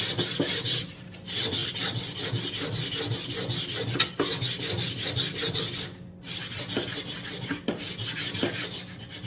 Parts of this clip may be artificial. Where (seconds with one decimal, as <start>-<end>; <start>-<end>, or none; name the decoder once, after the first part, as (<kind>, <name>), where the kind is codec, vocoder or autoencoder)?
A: none